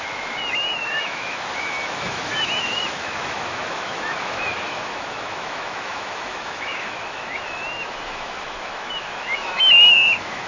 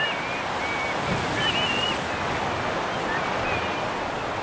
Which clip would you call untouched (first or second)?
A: second